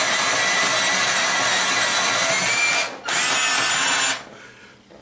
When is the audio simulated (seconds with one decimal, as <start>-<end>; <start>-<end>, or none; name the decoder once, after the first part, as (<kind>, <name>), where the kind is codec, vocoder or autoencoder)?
none